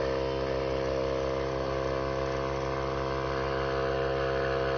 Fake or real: real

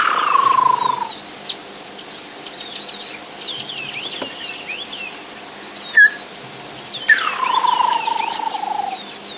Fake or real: real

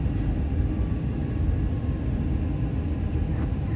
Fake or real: real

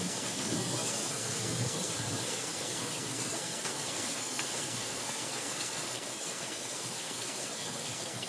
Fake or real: fake